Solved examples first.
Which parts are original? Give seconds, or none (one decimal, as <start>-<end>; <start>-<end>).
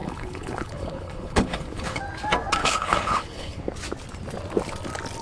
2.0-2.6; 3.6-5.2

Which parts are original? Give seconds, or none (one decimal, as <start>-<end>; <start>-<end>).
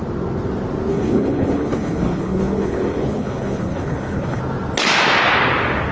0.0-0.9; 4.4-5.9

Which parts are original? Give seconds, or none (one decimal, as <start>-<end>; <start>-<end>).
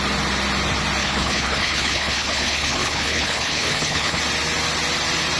0.0-1.0; 4.2-5.4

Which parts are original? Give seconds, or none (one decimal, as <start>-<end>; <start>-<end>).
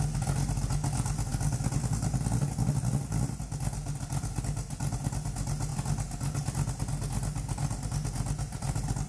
0.0-9.1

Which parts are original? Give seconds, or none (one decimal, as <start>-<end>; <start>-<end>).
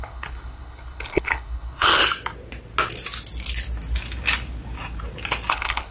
2.0-5.5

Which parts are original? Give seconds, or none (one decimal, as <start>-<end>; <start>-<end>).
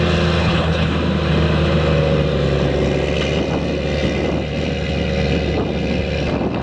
0.0-0.4; 0.9-6.6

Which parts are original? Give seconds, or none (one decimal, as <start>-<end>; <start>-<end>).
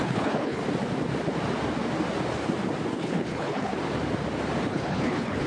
0.6-2.9; 3.7-4.7